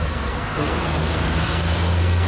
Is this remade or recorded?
remade